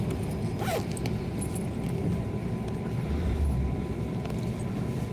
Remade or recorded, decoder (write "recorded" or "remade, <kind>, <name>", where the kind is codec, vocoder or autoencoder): recorded